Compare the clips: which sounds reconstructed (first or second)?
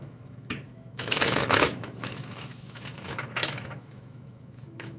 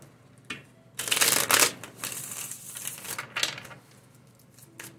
first